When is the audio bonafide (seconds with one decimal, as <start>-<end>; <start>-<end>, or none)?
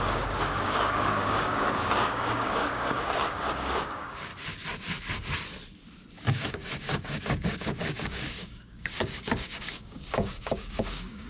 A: 4.3-6.2